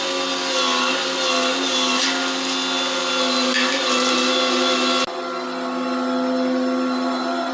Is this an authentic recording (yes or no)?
yes